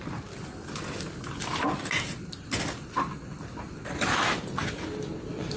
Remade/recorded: recorded